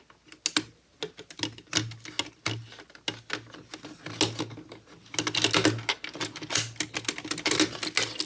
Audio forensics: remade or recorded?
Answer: recorded